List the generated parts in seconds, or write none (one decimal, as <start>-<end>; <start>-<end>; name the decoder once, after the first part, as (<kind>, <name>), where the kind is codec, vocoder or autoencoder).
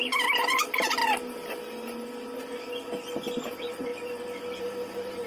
0.0-1.0 (vocoder, BigVGAN v2); 3.5-3.9; 4.6-5.3